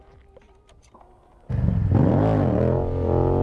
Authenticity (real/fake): real